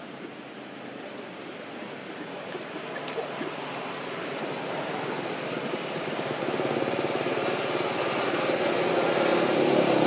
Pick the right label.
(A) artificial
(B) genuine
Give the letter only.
B